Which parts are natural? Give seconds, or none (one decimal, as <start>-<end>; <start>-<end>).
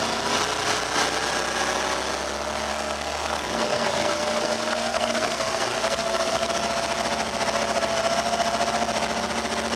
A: 0.0-2.7; 6.5-9.8